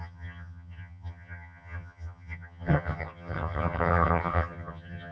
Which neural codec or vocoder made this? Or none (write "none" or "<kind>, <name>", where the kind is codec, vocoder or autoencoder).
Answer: vocoder, HiFi-GAN